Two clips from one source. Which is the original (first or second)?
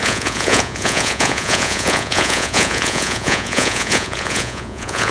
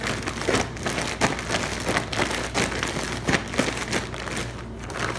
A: second